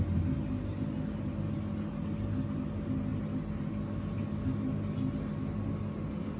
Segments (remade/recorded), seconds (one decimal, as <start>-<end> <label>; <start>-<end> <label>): 0.0-6.4 recorded